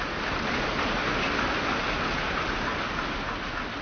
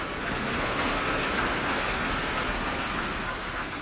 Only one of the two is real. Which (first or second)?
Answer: first